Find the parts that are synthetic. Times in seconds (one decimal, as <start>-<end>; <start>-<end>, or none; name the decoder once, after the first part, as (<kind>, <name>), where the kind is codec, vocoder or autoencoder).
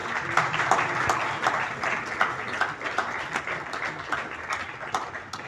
0.0-0.7 (vocoder, BigVGAN v2)